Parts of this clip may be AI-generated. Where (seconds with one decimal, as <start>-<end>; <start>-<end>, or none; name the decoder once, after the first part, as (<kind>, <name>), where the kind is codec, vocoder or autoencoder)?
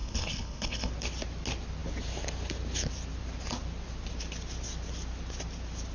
0.0-0.9 (codec, HILCodec)